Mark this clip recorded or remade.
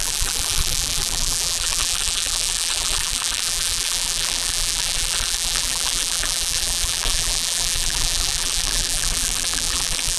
remade